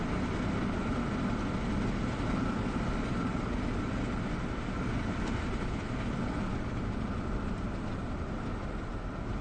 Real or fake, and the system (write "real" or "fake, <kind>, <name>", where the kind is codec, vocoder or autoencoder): real